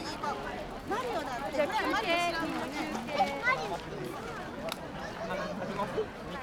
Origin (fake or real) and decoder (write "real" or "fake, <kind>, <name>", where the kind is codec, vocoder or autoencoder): real